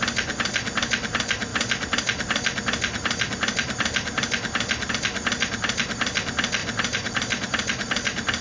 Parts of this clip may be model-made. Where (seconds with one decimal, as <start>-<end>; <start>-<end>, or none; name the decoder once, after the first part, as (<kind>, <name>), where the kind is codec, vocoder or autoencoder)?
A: 6.6-8.4 (vocoder, BigVGAN v2)